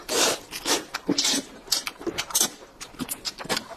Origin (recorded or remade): remade